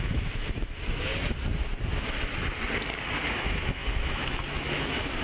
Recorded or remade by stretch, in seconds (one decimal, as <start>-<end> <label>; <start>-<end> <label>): 0.0-1.1 remade; 1.1-3.3 recorded; 3.3-5.2 remade